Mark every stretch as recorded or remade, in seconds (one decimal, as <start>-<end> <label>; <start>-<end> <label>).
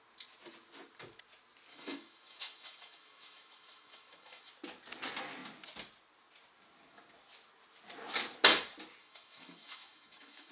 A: 0.0-1.7 recorded; 1.7-4.5 remade; 4.5-9.0 recorded; 9.0-10.5 remade